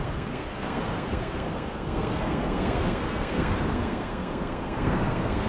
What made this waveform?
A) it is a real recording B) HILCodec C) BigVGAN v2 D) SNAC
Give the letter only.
D